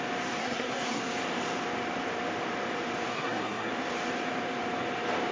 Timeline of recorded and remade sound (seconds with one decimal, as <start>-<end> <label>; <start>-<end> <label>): 0.0-0.4 recorded; 0.4-1.0 remade; 1.0-3.1 recorded; 3.1-3.7 remade; 3.7-5.3 recorded